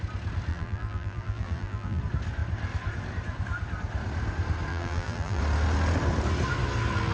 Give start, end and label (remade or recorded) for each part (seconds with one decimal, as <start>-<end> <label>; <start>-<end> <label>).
0.0-0.5 recorded; 0.5-2.0 remade; 2.0-4.7 recorded; 4.7-5.4 remade; 5.4-7.1 recorded